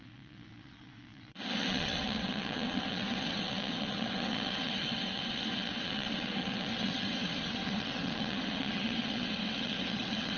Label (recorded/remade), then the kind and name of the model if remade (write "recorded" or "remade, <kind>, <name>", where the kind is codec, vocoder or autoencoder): remade, vocoder, WaveNeXt